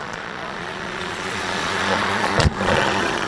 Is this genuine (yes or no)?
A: no